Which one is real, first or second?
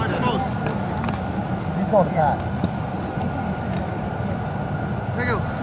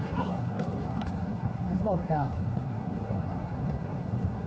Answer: first